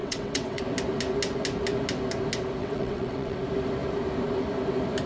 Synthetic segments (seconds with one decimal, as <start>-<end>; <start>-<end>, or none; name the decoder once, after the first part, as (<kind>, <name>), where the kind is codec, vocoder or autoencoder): 0.0-0.6 (vocoder, WaveNeXt); 2.6-3.4